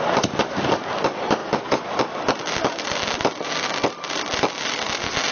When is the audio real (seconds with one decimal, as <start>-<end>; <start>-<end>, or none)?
0.0-5.3